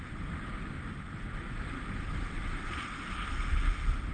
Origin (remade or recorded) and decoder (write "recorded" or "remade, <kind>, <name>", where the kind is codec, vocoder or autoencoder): recorded